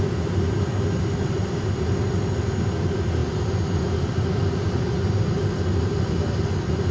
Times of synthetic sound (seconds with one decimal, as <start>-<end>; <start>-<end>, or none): none